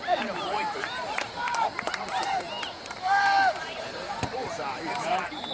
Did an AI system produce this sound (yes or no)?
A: yes